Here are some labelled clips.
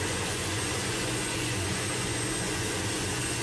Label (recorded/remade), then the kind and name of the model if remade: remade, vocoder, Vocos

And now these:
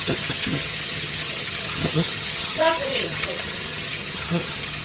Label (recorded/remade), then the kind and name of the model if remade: remade, vocoder, HiFi-GAN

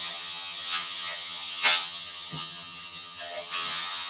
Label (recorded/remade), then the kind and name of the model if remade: remade, vocoder, HiFi-GAN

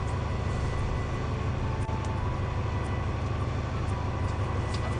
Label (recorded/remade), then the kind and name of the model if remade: recorded